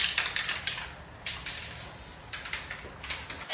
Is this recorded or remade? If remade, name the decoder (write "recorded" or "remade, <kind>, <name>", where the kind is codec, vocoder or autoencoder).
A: recorded